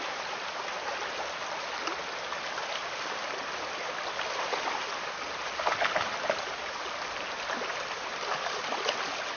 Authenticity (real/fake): real